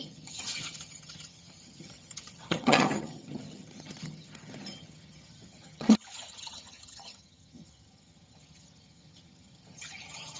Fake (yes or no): yes